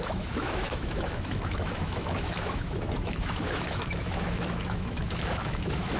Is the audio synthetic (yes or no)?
yes